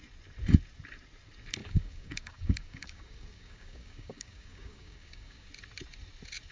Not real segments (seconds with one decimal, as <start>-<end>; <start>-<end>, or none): 1.6-5.5